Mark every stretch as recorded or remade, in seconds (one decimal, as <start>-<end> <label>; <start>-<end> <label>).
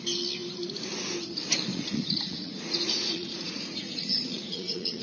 0.0-1.7 recorded; 1.7-5.0 remade